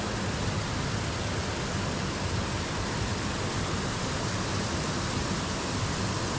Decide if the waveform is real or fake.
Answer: fake